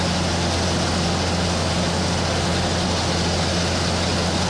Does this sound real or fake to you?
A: real